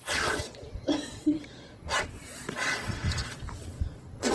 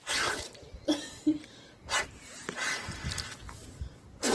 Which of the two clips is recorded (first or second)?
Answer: second